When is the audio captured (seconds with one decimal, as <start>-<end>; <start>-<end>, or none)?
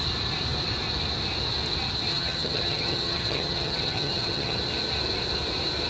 0.0-2.1; 4.6-5.9